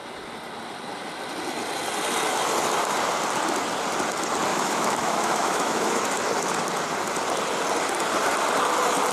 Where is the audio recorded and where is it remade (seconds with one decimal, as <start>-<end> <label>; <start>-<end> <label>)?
0.0-4.5 recorded; 4.5-6.0 remade; 6.0-9.1 recorded